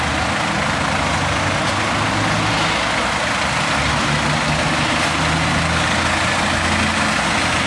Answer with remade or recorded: recorded